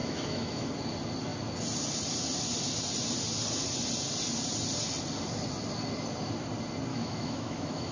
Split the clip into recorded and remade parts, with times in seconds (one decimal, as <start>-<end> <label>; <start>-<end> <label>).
0.0-0.7 remade; 0.7-6.9 recorded; 6.9-7.9 remade